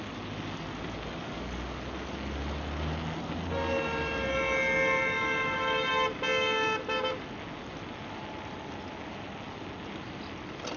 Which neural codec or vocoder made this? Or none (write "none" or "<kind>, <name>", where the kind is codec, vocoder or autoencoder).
none